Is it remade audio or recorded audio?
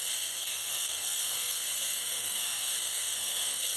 remade